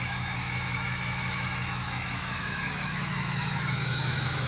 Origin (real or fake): fake